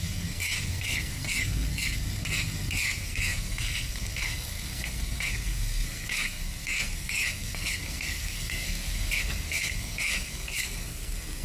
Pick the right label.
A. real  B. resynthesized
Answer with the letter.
B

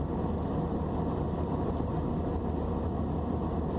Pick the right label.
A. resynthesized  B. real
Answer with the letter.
B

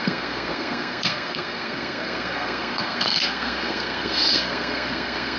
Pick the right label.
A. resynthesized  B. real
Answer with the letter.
A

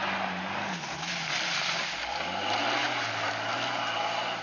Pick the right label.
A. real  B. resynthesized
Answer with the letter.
A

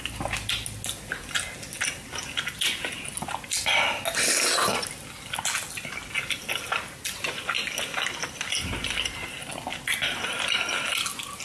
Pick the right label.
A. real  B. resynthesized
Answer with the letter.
A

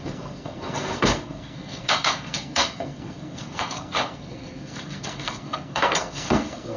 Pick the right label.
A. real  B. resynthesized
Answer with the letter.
B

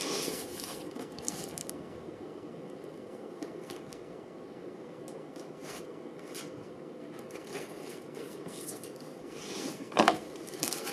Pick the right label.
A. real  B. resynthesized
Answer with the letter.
B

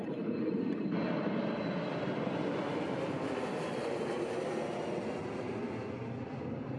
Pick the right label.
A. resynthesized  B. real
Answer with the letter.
B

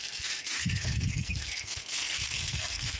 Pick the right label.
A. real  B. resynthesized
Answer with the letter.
B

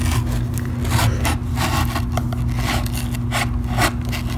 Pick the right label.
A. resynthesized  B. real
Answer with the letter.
B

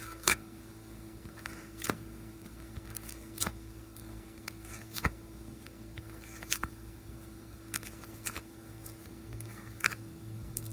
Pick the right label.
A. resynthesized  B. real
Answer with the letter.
A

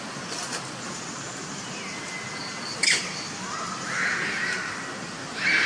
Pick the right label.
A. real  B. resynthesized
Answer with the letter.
A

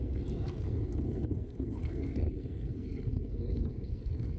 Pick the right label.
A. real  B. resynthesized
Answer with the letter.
B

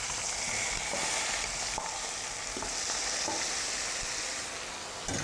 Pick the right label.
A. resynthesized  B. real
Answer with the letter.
B